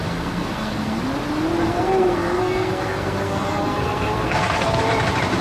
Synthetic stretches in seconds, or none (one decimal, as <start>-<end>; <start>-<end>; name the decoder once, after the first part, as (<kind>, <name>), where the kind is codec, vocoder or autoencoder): 0.0-1.0 (codec, SNAC); 1.6-4.8